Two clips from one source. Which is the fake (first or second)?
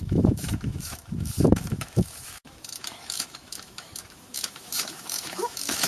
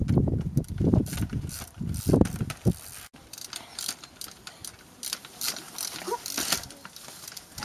first